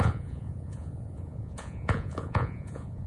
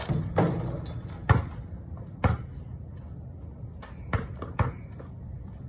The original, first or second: second